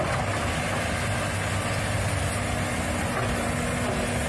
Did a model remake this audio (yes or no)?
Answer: no